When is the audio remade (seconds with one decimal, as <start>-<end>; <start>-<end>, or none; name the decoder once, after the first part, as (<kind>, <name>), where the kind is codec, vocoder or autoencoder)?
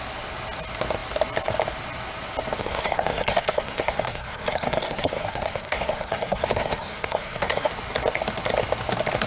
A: 2.6-7.7 (codec, SNAC)